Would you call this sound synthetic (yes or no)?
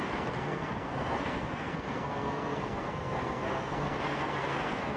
yes